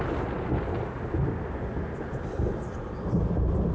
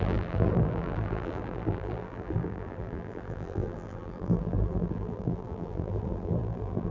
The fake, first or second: second